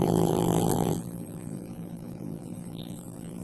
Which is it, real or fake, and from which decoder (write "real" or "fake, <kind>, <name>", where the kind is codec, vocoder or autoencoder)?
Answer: fake, vocoder, BigVGAN v2